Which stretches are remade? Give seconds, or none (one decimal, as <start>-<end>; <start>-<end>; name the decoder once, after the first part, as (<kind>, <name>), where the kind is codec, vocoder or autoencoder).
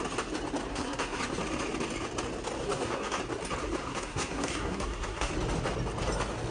0.7-1.2 (codec, SNAC); 2.6-3.2; 3.9-5.3